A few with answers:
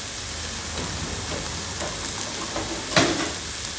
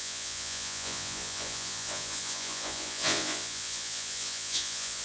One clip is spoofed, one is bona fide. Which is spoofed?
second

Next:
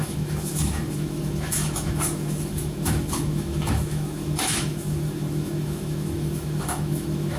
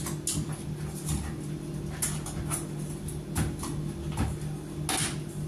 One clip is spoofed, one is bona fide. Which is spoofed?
first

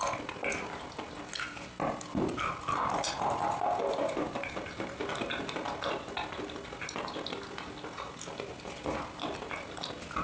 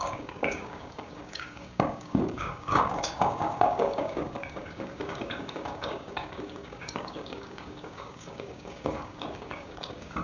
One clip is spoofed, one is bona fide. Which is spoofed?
second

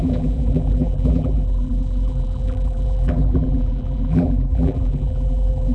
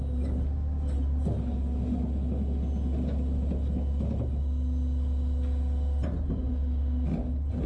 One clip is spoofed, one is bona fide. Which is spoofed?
first